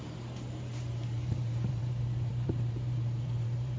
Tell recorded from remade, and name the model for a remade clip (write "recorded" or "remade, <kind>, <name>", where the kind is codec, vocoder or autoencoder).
remade, vocoder, BigVGAN v2